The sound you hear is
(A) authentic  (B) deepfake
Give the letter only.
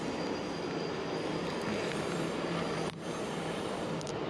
B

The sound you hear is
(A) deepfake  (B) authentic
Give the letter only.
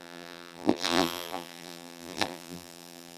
A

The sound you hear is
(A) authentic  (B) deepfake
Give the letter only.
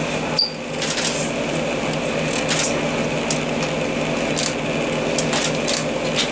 A